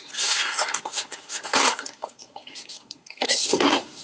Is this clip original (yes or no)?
no